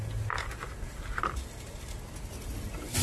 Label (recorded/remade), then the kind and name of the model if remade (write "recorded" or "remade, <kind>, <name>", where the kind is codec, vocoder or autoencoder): recorded